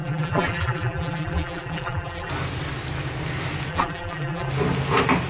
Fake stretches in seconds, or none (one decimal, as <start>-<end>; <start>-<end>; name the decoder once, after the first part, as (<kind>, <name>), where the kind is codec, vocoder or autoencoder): 0.0-2.3 (vocoder, BigVGAN v2); 3.7-4.5